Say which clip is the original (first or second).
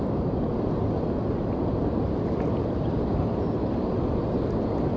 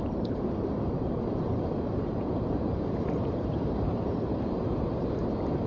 first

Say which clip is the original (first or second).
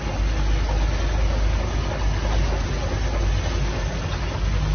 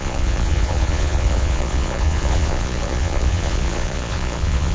first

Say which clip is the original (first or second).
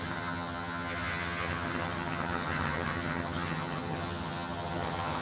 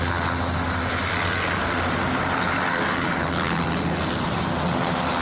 second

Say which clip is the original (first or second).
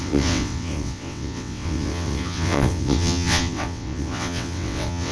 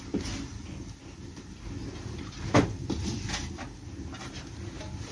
second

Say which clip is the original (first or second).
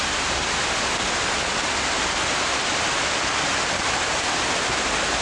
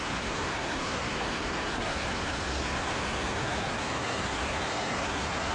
first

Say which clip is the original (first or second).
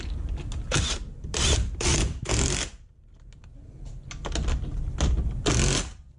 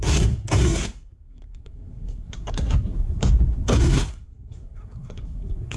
first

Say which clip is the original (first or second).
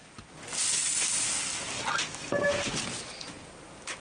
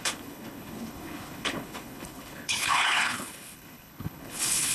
first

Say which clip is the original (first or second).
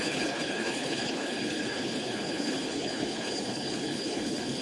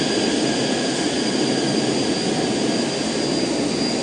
second